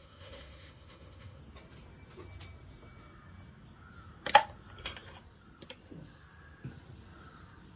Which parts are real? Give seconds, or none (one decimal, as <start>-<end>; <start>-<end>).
1.4-7.8